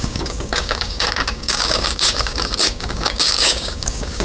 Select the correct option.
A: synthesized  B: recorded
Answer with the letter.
A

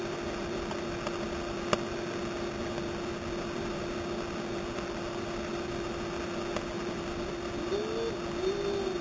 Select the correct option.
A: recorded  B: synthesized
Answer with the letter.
A